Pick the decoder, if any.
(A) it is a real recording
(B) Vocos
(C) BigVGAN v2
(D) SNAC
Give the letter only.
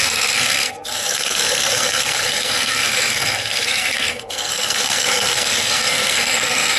D